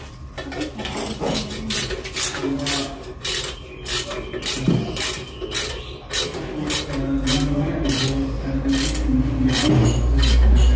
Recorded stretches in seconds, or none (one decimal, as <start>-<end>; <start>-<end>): 0.0-10.8